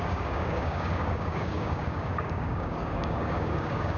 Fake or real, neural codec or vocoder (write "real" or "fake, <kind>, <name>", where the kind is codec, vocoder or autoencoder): fake, codec, DAC